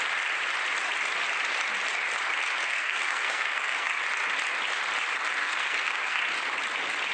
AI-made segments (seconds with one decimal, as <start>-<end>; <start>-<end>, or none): 2.6-4.0; 5.4-6.2

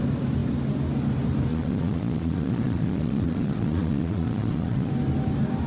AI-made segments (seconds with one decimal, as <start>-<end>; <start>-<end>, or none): 1.5-4.9

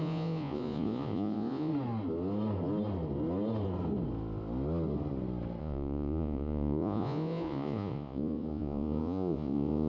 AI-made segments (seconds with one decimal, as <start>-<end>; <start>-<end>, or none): 0.0-1.7; 5.6-9.9

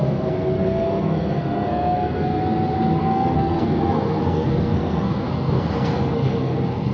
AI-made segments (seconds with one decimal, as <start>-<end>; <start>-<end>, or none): 0.0-2.4; 3.0-6.9

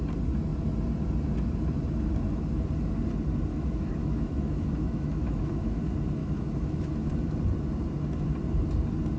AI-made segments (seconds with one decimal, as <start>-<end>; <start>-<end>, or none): 3.5-5.8; 6.2-7.1

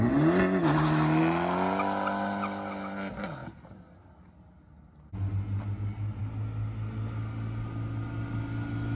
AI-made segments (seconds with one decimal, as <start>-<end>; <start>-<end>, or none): none

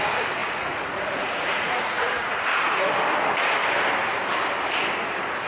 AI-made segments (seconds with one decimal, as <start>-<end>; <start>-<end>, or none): 0.4-2.9

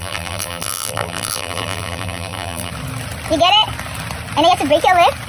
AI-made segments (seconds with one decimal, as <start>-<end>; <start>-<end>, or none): 0.0-2.7